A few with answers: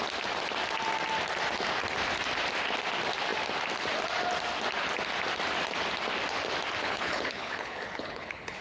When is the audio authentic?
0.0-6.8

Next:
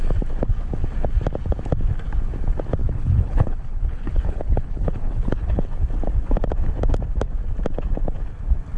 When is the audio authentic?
0.0-2.8; 5.7-8.8

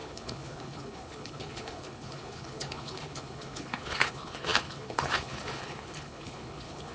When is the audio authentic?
none

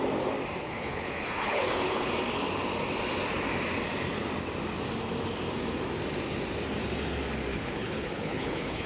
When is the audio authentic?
0.0-0.6; 2.1-7.5

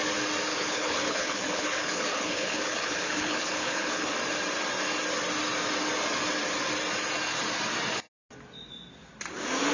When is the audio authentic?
0.0-0.5; 4.1-9.7

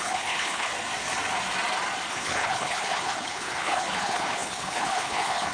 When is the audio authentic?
0.7-2.1